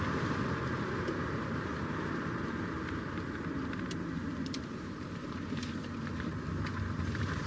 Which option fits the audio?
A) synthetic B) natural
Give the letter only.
A